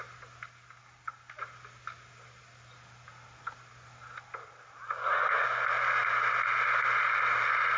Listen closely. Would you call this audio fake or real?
real